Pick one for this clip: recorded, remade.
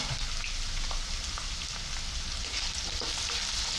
recorded